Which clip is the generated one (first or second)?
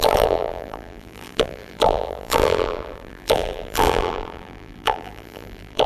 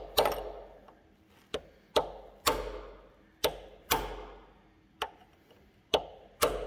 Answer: first